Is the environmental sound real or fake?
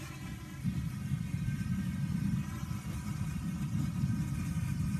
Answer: fake